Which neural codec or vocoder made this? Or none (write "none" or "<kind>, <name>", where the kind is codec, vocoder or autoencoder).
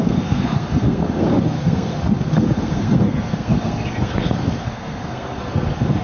codec, SNAC